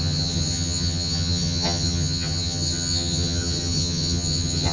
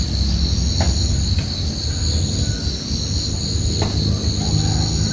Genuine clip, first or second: second